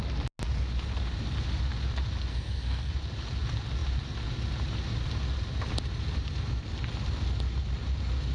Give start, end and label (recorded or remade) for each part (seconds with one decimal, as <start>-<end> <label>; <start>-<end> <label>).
0.0-2.3 recorded; 2.3-2.9 remade; 2.9-8.3 recorded